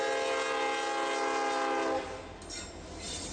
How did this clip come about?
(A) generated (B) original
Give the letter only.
B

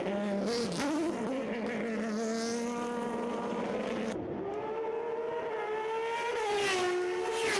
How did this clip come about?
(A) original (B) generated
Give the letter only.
A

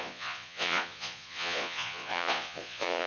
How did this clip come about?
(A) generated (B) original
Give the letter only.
A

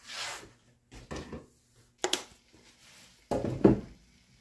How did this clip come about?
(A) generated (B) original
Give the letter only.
B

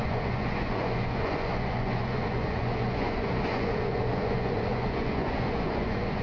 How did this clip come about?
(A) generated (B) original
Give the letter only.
A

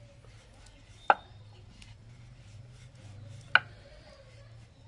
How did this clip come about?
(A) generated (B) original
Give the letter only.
B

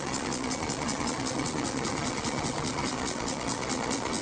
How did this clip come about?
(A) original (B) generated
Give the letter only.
B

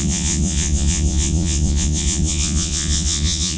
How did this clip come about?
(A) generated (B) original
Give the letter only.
A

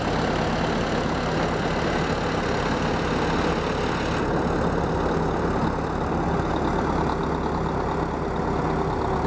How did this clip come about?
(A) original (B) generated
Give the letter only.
A